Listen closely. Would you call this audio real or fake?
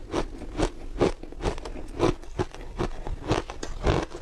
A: real